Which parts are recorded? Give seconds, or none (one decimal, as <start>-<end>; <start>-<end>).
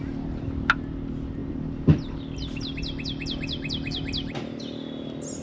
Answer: 0.0-5.4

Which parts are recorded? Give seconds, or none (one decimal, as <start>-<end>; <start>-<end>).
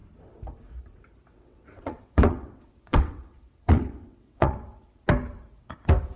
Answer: 0.0-1.3; 5.0-6.2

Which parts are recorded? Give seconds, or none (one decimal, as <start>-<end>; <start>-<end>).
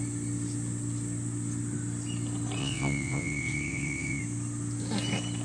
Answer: 0.0-2.6; 4.2-5.4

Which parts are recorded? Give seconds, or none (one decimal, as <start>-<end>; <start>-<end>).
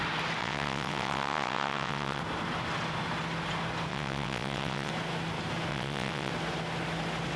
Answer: 0.0-0.4; 2.2-3.9; 4.9-5.7; 6.3-7.4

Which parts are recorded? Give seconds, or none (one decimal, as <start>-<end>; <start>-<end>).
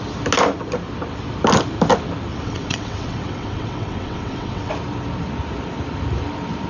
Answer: 0.0-2.3; 4.7-6.7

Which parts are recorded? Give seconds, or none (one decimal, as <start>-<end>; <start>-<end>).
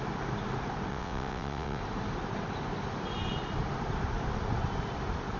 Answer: 0.0-0.9; 1.8-5.4